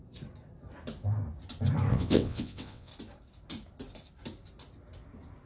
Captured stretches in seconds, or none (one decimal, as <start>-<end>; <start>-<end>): 0.0-1.9; 2.9-5.5